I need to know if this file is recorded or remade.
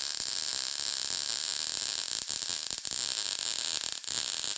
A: recorded